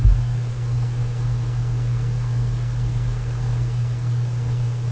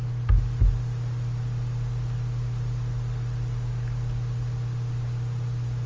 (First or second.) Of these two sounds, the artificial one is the first